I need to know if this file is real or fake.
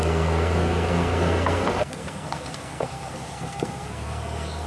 fake